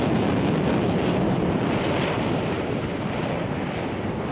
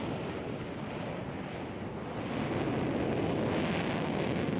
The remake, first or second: first